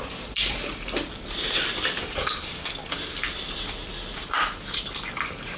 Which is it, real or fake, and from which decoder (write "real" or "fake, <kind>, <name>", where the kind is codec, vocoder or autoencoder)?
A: fake, vocoder, BigVGAN v2